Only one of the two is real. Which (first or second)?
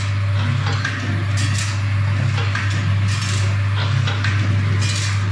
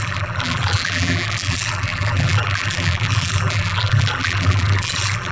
first